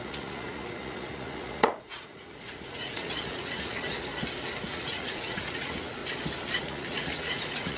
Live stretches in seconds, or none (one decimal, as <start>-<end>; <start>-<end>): 4.1-4.6; 6.0-6.6